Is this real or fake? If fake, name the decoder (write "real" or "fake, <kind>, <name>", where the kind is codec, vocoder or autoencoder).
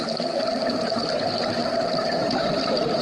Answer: real